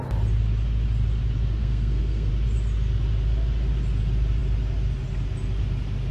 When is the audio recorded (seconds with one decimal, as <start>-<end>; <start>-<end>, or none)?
0.0-1.6; 2.3-6.1